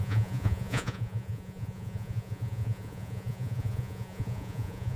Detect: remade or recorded remade